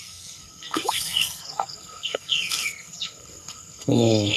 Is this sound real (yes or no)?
no